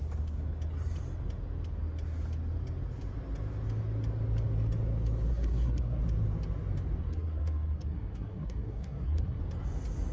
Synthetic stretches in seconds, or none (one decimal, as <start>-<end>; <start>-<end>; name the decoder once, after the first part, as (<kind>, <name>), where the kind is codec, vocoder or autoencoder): 5.3-6.0 (codec, SNAC); 7.0-9.4